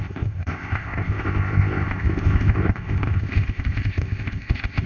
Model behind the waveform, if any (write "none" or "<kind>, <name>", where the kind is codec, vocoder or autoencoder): codec, ZipCodec